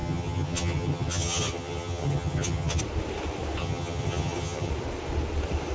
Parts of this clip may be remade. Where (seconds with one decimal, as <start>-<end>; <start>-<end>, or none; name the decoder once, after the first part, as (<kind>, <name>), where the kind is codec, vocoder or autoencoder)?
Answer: 0.0-2.8 (vocoder, HiFi-GAN); 3.6-4.7